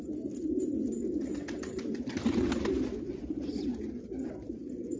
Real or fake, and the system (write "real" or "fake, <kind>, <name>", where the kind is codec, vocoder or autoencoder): real